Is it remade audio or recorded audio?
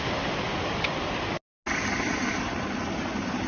recorded